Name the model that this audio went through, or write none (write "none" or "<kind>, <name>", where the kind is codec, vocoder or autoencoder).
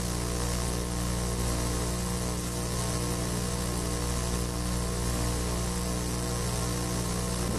none